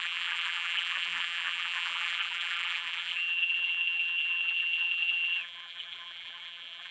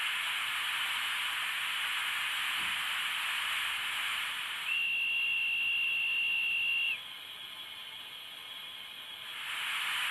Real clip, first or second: second